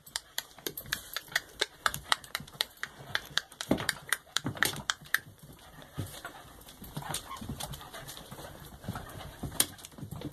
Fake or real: fake